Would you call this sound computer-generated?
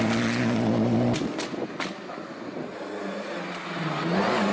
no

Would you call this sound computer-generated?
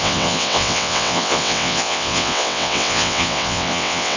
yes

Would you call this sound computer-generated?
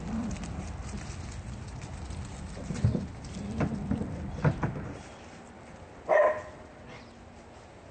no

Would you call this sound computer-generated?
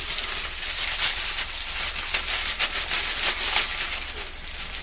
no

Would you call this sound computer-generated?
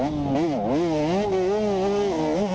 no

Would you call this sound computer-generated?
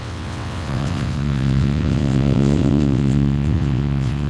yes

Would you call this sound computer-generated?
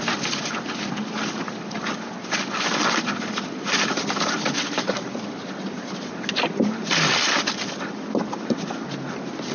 no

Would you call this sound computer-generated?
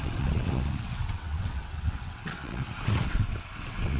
yes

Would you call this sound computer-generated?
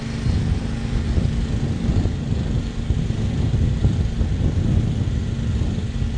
no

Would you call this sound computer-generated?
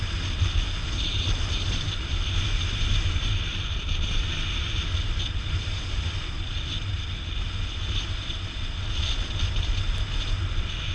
no